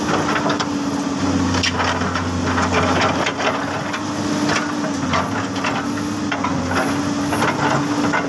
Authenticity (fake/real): real